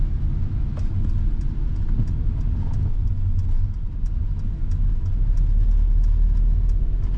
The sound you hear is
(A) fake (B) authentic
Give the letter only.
B